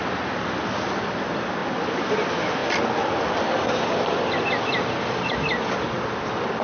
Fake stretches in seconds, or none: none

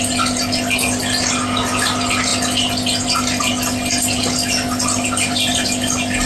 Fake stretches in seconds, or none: none

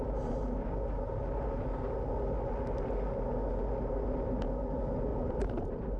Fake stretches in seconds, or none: 5.1-6.0 (vocoder, BigVGAN v2)

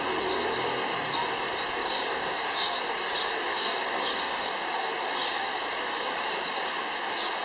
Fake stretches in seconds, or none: 1.8-2.8 (codec, DAC); 3.5-4.5; 5.2-6.5